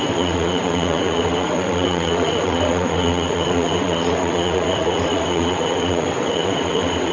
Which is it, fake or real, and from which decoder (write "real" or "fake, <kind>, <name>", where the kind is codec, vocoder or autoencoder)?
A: fake, vocoder, WaveNeXt